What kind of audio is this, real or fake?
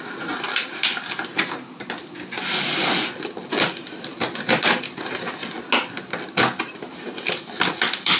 real